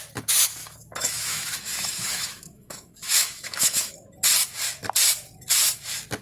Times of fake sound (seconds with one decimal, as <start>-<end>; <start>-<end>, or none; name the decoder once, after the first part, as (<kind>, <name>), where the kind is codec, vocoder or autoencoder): 0.6-3.9 (autoencoder, DAC-VAE)